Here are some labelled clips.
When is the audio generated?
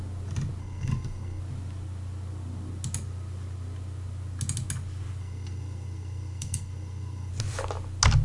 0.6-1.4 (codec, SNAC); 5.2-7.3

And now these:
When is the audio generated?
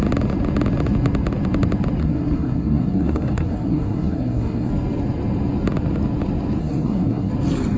2.0-4.7 (codec, SNAC); 6.6-7.3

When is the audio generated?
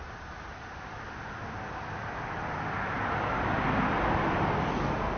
none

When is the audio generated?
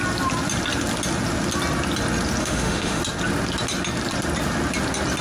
2.4-3.0 (autoencoder, DAC-VAE)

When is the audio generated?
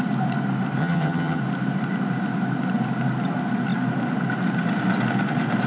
0.8-1.4 (vocoder, HiFi-GAN)